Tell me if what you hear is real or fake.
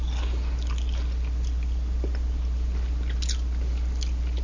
real